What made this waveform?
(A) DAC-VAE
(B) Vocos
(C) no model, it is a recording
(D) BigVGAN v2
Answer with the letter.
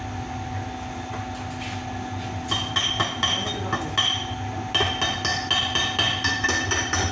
C